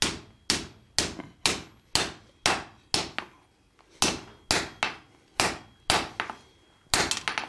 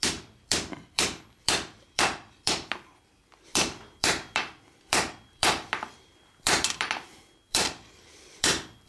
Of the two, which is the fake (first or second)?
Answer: second